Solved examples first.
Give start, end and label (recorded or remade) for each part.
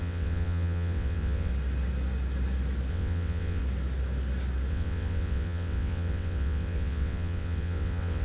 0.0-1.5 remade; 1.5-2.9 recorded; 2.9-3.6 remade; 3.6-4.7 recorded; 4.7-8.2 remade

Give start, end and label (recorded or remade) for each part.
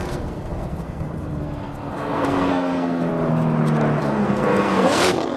0.0-3.1 remade; 3.1-4.0 recorded; 4.0-5.4 remade